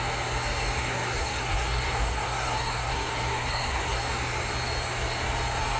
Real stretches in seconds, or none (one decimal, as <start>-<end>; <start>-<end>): 0.0-0.8; 4.0-5.8